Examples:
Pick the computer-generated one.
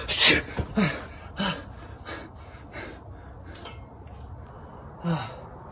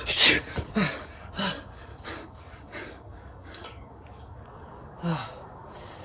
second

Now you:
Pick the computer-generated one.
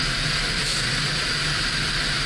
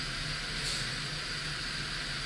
first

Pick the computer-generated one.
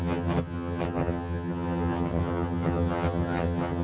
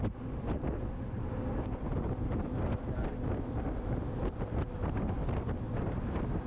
first